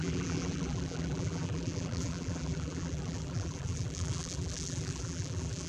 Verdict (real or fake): fake